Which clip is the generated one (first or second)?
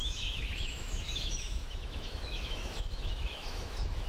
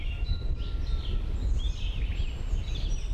first